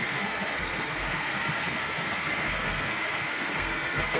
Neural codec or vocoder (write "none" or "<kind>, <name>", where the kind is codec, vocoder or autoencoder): codec, SNAC